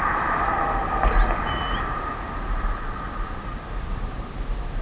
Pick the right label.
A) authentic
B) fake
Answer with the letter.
A